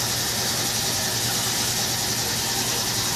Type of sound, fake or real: real